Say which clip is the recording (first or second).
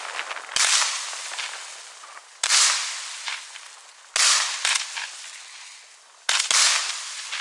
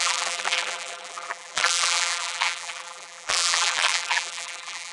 first